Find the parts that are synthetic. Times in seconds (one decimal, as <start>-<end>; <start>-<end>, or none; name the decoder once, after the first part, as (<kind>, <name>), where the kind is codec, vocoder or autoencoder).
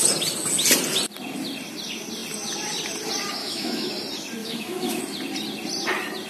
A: 3.4-3.9 (autoencoder, DAC-VAE); 4.4-5.0